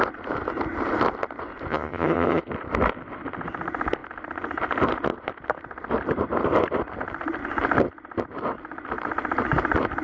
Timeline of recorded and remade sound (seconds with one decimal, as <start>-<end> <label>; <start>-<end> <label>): 0.0-1.7 recorded; 1.7-2.4 remade; 2.4-10.0 recorded